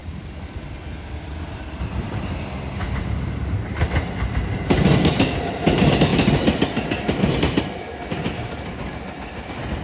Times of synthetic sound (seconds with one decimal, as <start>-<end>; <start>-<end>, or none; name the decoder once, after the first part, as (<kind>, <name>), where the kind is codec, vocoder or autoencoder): 0.0-2.7 (vocoder, BigVGAN v2); 6.1-7.6